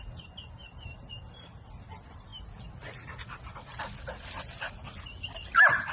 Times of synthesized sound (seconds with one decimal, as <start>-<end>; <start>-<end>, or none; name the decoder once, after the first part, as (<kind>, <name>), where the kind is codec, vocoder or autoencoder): none